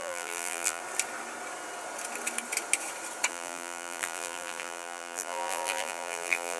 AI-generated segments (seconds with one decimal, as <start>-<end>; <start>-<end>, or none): 0.0-0.8; 3.3-6.6